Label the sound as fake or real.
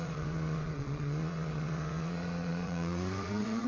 fake